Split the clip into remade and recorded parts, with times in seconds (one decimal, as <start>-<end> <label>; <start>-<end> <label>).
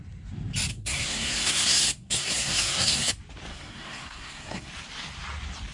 0.0-0.7 recorded; 0.7-3.1 remade; 3.1-3.5 recorded; 3.5-4.7 remade; 4.7-5.7 recorded